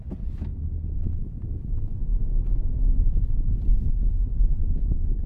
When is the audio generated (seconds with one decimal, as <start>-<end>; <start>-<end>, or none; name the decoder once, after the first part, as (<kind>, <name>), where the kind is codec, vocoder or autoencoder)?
none